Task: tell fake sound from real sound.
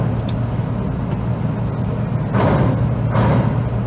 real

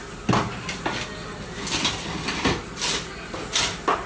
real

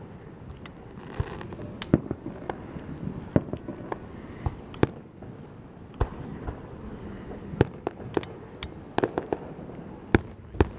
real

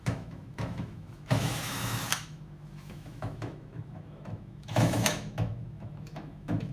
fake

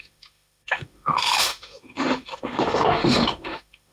fake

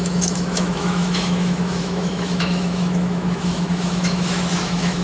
fake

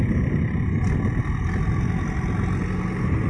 real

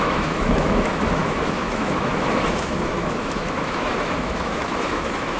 fake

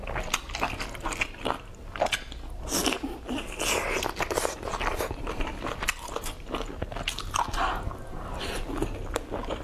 real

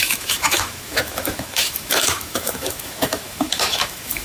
fake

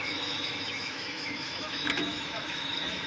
fake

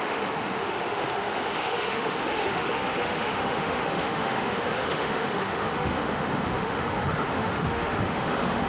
fake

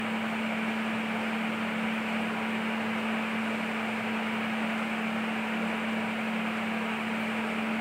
real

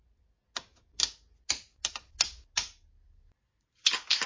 real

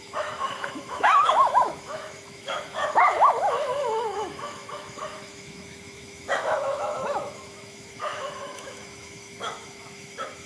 fake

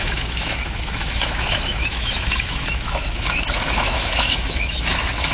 fake